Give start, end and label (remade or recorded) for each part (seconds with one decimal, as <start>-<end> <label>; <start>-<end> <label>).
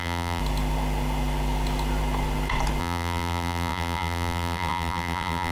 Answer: 0.0-0.4 remade; 0.4-2.8 recorded; 2.8-5.5 remade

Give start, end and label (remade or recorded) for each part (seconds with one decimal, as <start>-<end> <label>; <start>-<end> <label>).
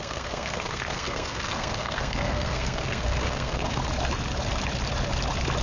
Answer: 0.0-3.8 remade; 3.8-5.6 recorded